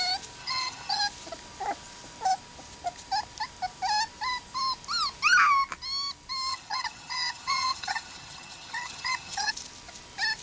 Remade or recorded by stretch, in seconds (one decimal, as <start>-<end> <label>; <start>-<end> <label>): 0.0-0.4 recorded; 0.4-1.0 remade; 1.0-6.5 recorded; 6.5-9.5 remade; 9.5-10.4 recorded